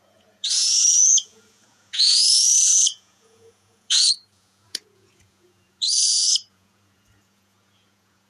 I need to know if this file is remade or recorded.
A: remade